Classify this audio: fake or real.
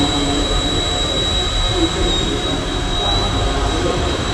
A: fake